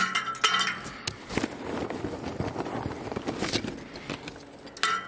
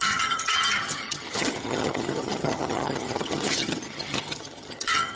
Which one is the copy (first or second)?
second